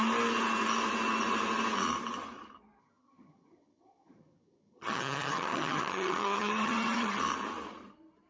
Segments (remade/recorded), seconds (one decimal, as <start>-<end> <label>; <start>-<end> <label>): 0.0-2.8 recorded; 2.8-7.2 remade; 7.2-8.3 recorded